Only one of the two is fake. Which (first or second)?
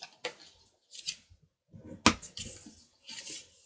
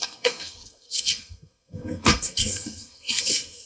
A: second